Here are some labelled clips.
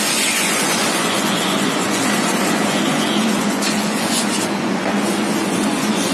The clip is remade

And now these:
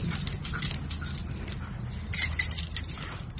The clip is recorded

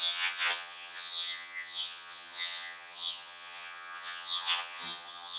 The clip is remade